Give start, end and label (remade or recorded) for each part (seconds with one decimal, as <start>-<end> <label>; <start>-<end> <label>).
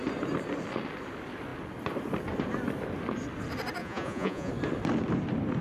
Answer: 0.0-3.8 recorded; 3.8-4.5 remade; 4.5-5.6 recorded